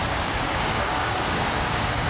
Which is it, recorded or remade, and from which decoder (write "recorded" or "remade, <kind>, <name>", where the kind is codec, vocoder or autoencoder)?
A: remade, codec, DAC